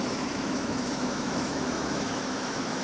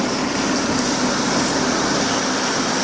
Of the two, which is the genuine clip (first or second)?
second